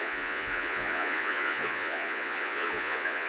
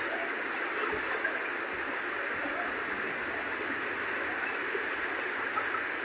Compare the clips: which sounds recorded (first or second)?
second